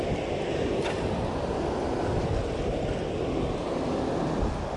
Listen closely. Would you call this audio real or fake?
real